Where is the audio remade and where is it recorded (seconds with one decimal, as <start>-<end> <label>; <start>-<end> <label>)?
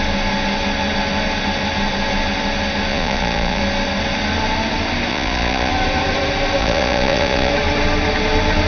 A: 0.0-2.9 recorded; 2.9-3.6 remade; 3.6-5.1 recorded; 5.1-5.7 remade; 5.7-6.6 recorded; 6.6-7.5 remade; 7.5-8.7 recorded